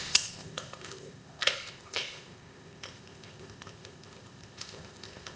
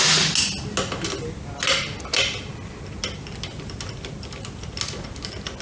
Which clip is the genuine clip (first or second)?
second